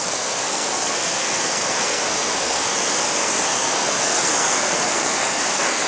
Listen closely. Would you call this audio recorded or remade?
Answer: remade